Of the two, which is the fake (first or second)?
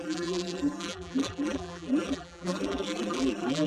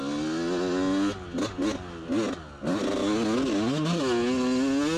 first